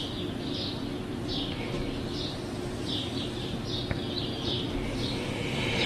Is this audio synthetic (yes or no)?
yes